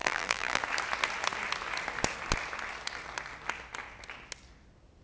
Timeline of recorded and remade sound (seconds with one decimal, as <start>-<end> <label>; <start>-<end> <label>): 0.0-0.6 remade; 0.6-5.0 recorded